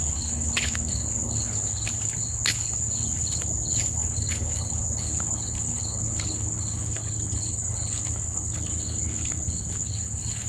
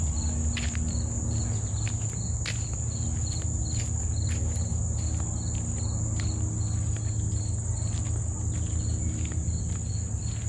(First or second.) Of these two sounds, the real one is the second